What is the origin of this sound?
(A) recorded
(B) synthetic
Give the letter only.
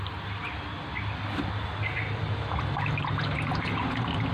A